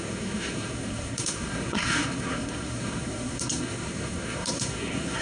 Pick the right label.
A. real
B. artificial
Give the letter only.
B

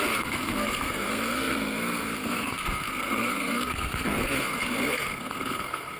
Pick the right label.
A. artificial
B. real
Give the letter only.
A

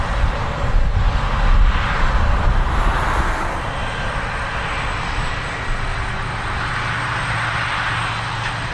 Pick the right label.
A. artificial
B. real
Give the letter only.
B